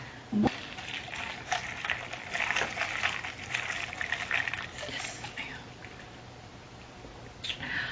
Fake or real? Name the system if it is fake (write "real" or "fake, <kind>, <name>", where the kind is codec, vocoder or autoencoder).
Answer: real